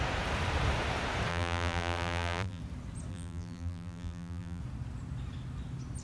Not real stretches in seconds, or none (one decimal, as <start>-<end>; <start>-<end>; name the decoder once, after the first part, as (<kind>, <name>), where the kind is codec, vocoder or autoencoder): 1.3-2.6 (vocoder, BigVGAN v2); 3.1-4.6